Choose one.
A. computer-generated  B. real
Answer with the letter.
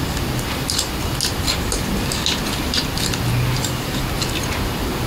B